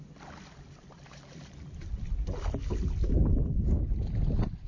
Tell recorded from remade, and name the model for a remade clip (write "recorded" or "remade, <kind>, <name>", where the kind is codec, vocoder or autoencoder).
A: recorded